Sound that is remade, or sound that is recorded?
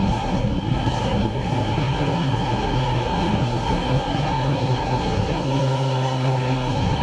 remade